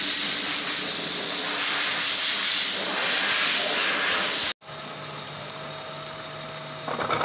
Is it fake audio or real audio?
real